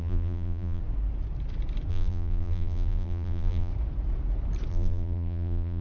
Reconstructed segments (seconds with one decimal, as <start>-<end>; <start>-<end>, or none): 0.0-0.8; 1.9-3.7; 4.7-5.8